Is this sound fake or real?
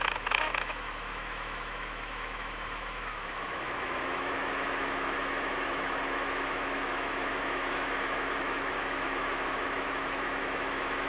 fake